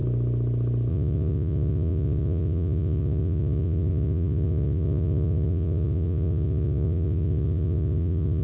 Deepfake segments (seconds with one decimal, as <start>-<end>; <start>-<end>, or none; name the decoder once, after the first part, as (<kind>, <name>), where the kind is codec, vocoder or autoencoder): 0.9-8.4 (vocoder, Vocos)